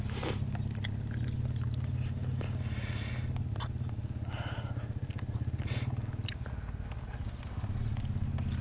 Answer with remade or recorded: recorded